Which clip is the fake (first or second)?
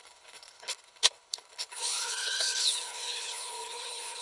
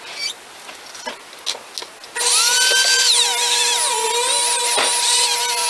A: first